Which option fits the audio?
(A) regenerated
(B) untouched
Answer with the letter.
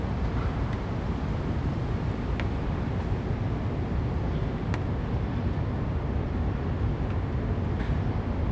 B